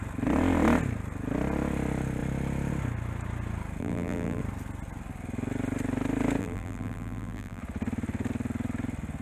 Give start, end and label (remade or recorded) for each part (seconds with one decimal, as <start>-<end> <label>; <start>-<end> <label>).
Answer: 0.0-3.8 recorded; 3.8-4.4 remade; 4.4-6.4 recorded; 6.4-7.6 remade; 7.6-9.2 recorded